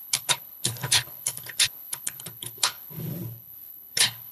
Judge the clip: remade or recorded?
remade